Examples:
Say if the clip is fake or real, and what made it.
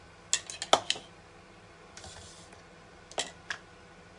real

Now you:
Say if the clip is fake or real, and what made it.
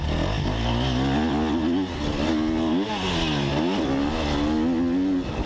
real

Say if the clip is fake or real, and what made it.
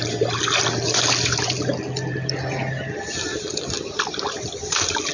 fake, vocoder, BigVGAN v2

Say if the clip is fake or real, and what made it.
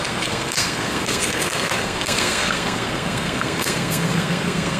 fake, codec, SNAC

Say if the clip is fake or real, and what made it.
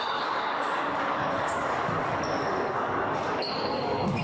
fake, codec, DAC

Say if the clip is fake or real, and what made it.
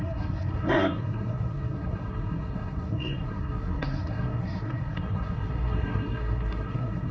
fake, codec, SNAC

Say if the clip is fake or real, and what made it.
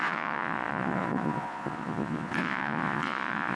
fake, vocoder, Vocos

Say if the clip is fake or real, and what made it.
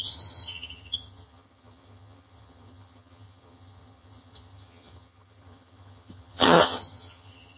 fake, vocoder, HiFi-GAN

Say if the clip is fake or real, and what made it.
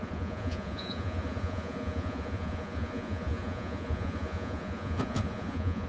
fake, vocoder, Vocos